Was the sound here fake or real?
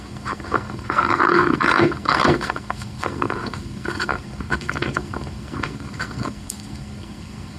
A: fake